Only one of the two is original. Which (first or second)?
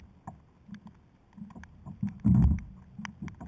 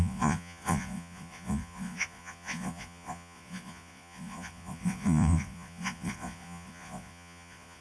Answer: first